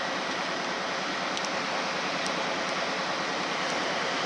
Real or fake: real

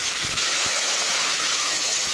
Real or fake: fake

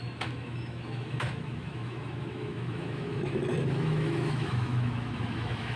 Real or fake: fake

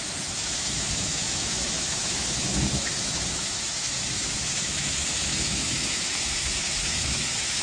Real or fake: fake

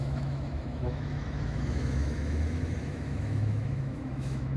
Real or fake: fake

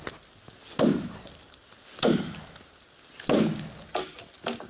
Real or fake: real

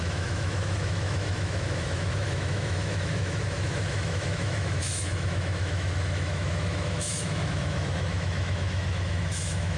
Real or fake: fake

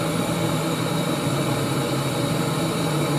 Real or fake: real